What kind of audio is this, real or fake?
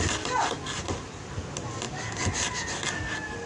real